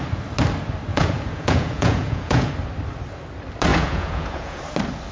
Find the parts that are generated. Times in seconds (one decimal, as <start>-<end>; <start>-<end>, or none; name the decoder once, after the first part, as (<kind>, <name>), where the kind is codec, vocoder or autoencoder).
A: 0.9-2.5 (vocoder, Vocos); 3.7-4.6